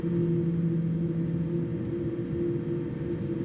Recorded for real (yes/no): yes